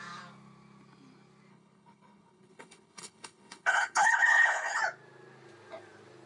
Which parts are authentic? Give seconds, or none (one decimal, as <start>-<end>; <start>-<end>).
0.0-1.5; 4.8-6.3